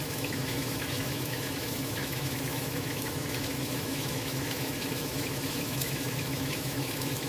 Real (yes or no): no